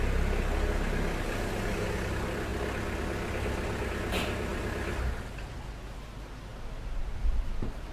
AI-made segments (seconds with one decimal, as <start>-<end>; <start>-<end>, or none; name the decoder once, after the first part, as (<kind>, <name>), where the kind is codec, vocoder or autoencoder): none